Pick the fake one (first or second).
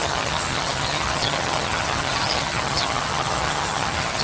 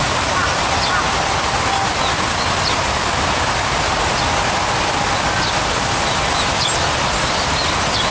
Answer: first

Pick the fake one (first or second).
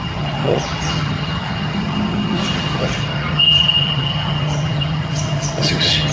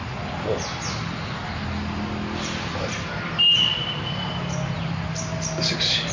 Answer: first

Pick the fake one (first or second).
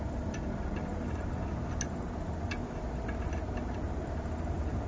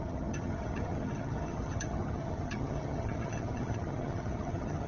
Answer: second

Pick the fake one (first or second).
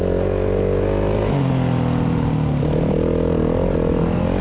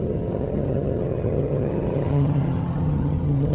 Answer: second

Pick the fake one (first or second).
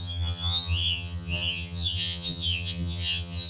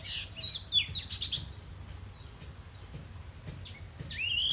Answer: first